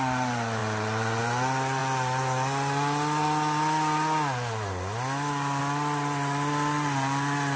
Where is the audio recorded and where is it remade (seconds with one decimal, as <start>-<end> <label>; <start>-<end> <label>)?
0.0-7.6 recorded